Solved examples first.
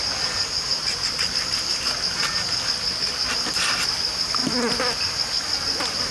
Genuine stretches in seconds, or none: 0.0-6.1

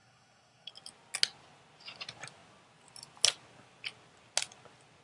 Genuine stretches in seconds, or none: 0.7-5.0

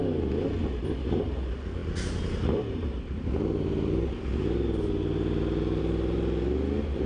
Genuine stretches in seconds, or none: 0.0-7.1